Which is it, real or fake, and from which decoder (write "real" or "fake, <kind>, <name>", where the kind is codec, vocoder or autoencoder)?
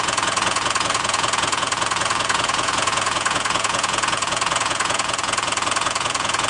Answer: fake, vocoder, Vocos